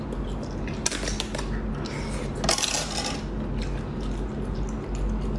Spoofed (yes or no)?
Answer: no